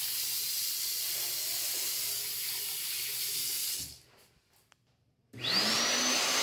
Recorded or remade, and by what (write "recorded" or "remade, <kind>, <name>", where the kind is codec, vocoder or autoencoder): recorded